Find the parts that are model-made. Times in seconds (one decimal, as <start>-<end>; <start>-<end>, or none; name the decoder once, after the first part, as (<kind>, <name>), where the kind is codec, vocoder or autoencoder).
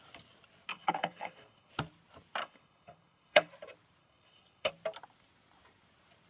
0.7-1.7 (codec, HILCodec); 2.4-3.5; 4.0-4.7